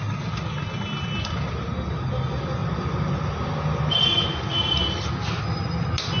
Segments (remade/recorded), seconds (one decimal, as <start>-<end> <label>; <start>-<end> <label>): 0.0-6.2 recorded